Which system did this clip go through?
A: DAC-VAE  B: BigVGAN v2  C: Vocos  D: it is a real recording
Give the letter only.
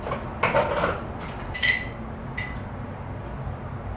D